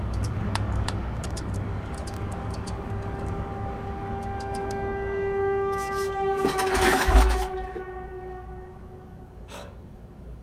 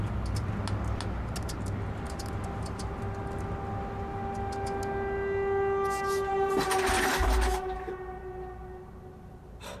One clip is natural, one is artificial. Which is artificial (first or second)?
first